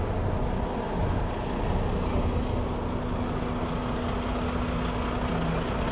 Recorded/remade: recorded